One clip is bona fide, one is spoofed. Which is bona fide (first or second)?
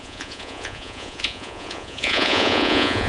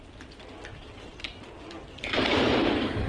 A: second